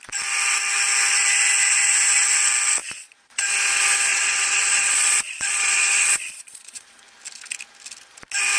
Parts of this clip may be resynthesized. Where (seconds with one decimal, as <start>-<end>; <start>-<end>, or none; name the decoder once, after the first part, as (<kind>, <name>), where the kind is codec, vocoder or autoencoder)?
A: 2.8-3.4 (vocoder, Vocos); 4.1-7.0